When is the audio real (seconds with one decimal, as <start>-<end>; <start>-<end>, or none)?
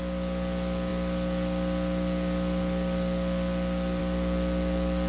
0.0-5.1